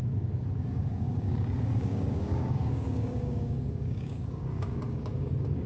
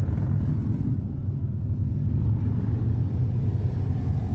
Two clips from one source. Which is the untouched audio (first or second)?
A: second